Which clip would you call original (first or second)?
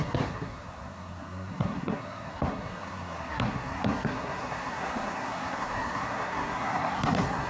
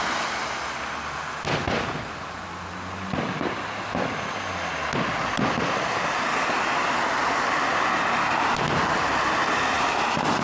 second